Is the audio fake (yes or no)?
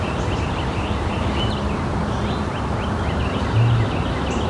no